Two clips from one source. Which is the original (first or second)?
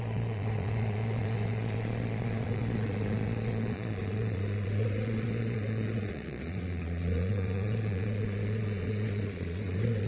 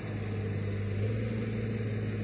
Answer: second